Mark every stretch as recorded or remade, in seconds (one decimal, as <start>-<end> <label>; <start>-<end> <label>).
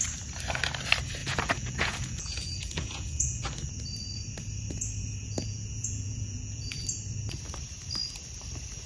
0.0-1.2 recorded; 1.2-3.4 remade; 3.4-5.2 recorded; 5.2-6.8 remade; 6.8-8.9 recorded